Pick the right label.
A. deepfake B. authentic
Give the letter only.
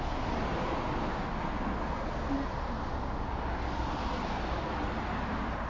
B